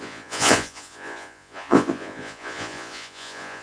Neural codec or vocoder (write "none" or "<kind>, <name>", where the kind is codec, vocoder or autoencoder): vocoder, Vocos